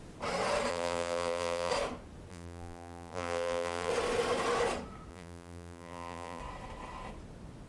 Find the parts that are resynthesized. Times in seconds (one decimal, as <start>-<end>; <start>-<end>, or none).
0.7-1.7; 2.3-3.9; 5.1-6.4